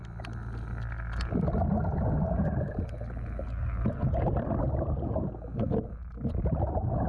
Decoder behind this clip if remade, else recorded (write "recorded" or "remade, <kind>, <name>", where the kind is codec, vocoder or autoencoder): recorded